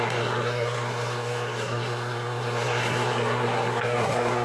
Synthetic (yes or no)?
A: yes